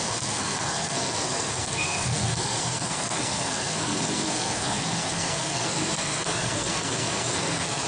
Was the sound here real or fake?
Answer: fake